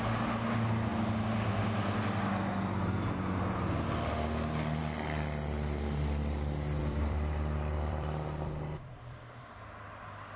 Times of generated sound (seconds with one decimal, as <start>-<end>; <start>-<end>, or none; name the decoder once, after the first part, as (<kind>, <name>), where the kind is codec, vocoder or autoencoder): 6.8-9.5 (vocoder, BigVGAN v2)